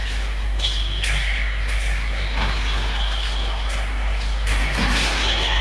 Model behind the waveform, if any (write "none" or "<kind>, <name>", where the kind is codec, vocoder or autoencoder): codec, SNAC